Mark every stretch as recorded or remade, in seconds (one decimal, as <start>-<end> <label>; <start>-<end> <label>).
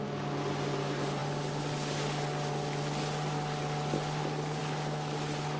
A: 0.0-5.6 recorded